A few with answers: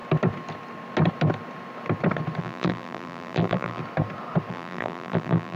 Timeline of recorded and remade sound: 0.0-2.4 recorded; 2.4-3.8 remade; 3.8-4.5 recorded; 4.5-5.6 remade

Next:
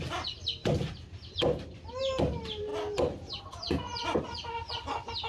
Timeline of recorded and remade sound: 0.0-5.3 recorded

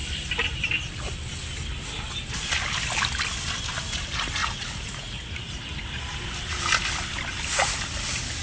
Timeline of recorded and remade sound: 0.0-4.4 recorded; 4.4-5.3 remade; 5.3-8.4 recorded